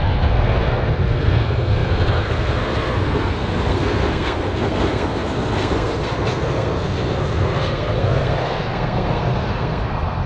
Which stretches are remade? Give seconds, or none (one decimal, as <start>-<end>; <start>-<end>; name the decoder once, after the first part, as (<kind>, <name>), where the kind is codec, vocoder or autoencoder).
0.0-10.3 (codec, SNAC)